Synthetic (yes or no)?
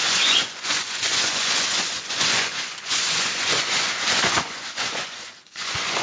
yes